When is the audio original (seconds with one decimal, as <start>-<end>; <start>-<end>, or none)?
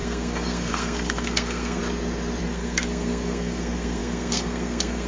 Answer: 1.8-2.4